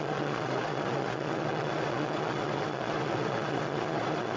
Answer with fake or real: fake